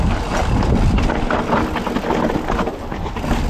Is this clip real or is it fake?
real